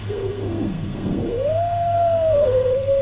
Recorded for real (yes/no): no